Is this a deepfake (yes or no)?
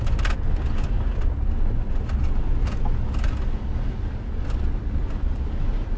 no